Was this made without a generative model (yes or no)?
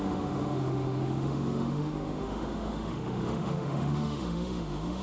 no